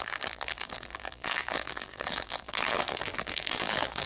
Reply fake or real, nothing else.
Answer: fake